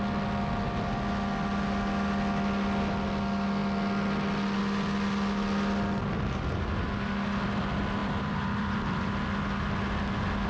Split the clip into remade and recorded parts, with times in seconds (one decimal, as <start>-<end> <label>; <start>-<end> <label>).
0.0-8.0 recorded; 8.0-9.1 remade; 9.1-10.5 recorded